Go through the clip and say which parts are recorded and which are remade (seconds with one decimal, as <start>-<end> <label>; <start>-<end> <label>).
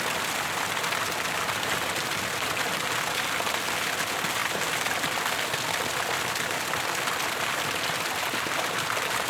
0.0-9.3 recorded